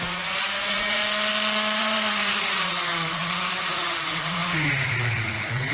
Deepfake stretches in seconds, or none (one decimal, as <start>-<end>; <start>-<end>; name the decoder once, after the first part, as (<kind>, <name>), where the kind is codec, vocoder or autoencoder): 0.0-1.0 (vocoder, Vocos); 1.8-2.9; 3.6-5.7